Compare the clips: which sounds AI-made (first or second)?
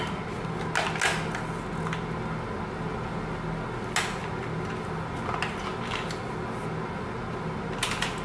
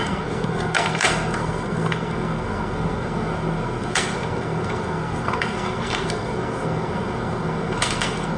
second